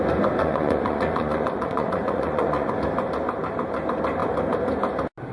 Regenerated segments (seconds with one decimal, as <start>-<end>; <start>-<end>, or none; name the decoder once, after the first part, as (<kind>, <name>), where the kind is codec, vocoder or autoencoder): 0.4-2.7 (vocoder, Vocos)